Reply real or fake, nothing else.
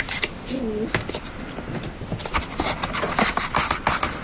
real